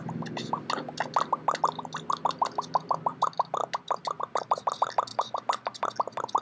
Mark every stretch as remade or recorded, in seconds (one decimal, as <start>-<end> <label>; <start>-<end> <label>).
0.0-6.4 recorded